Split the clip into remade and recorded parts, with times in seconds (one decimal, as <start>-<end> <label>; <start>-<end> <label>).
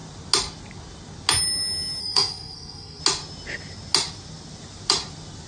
0.0-2.0 recorded; 2.0-3.0 remade; 3.0-5.5 recorded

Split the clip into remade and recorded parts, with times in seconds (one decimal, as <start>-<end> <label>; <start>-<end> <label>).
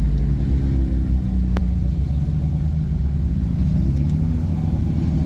0.0-5.3 recorded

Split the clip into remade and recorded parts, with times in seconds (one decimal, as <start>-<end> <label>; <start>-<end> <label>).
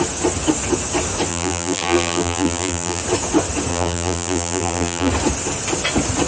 0.0-1.3 recorded; 1.3-3.0 remade; 3.0-3.7 recorded; 3.7-5.1 remade; 5.1-6.3 recorded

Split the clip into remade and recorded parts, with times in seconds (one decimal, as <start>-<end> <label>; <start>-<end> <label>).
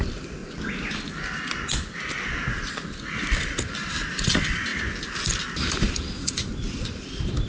0.0-0.4 remade; 0.4-3.3 recorded; 3.3-4.7 remade; 4.7-5.8 recorded; 5.8-7.5 remade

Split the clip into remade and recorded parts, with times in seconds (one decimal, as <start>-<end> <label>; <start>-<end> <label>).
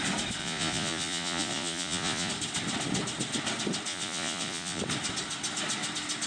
0.0-0.4 recorded; 0.4-2.3 remade; 2.3-3.9 recorded; 3.9-4.8 remade; 4.8-6.3 recorded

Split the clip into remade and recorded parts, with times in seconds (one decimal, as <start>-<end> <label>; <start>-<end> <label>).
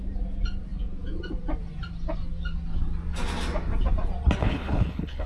0.0-4.4 recorded; 4.4-5.3 remade